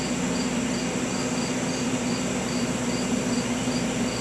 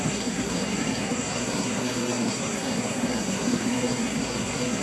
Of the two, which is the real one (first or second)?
first